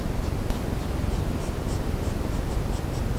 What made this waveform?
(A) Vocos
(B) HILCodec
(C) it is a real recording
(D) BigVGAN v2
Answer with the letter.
D